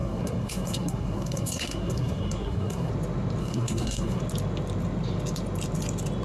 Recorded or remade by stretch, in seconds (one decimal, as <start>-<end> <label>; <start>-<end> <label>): 0.0-2.9 remade; 2.9-3.4 recorded; 3.4-4.2 remade; 4.2-6.2 recorded